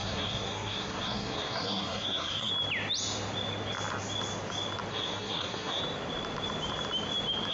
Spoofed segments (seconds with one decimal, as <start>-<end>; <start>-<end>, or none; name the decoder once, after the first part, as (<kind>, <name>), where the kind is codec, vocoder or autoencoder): 0.0-2.5 (codec, SNAC); 4.9-5.8